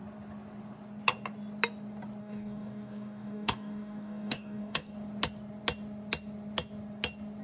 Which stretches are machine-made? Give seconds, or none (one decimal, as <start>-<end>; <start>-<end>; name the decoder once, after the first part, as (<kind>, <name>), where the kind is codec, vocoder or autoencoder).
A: 2.2-4.9 (codec, DAC)